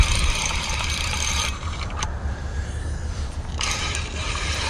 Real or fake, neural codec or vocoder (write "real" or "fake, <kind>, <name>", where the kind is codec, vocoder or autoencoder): fake, vocoder, BigVGAN v2